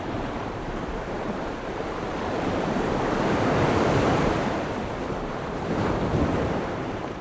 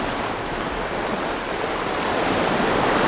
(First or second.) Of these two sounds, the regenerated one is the first